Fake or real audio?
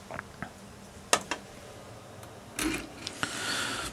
real